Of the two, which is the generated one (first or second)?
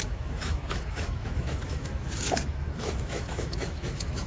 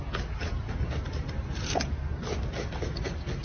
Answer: first